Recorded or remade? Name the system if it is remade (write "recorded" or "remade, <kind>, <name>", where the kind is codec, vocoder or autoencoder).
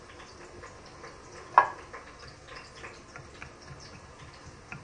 recorded